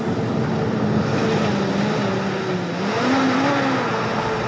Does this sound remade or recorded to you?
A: recorded